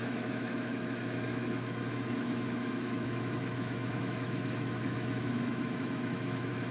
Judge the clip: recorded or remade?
remade